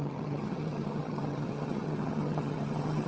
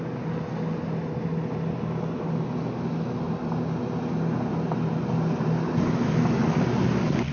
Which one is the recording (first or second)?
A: second